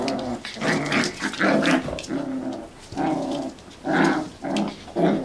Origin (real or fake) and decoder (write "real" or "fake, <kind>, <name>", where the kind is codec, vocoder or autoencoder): real